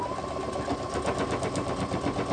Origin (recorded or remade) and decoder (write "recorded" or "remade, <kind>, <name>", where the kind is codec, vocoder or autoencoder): recorded